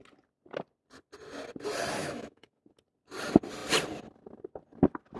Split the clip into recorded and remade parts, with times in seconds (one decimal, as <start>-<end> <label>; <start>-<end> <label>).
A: 0.0-2.0 recorded; 2.0-2.6 remade; 2.6-5.2 recorded